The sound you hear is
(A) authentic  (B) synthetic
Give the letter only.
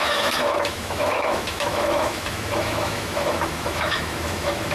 B